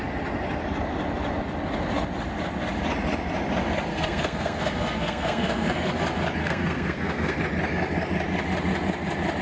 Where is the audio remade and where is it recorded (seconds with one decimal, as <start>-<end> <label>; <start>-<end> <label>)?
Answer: 0.0-3.9 recorded; 3.9-5.9 remade; 5.9-6.4 recorded; 6.4-7.4 remade; 7.4-9.4 recorded